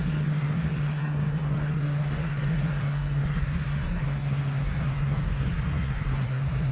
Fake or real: fake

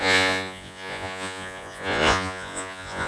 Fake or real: fake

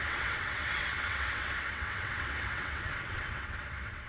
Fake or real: fake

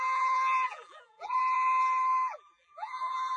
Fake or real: fake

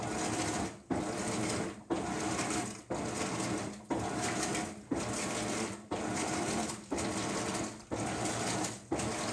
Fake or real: real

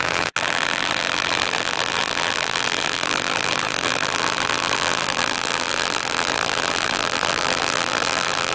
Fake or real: fake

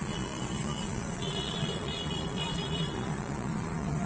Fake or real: fake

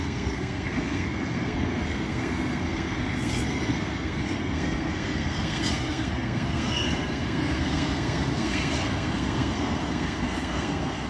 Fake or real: fake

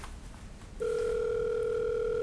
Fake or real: real